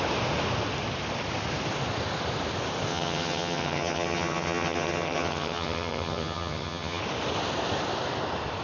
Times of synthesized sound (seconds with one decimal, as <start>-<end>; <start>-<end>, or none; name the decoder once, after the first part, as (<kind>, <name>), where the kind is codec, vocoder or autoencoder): 2.9-7.0 (vocoder, HiFi-GAN)